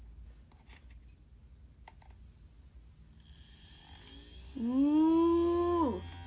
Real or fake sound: real